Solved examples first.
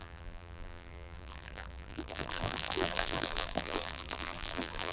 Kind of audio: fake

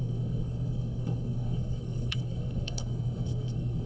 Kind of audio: fake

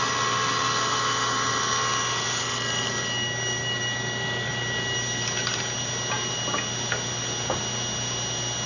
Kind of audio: real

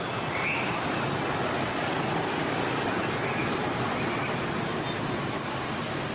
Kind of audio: real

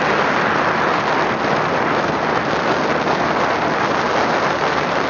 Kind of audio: real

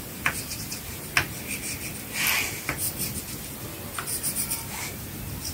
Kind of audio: real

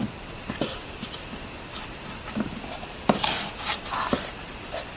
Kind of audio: real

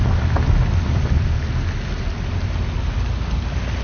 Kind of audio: real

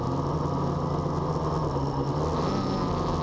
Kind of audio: real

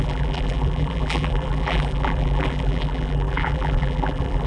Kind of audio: fake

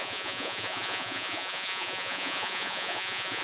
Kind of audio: fake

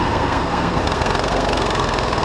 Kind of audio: fake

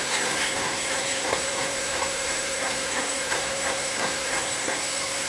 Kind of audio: fake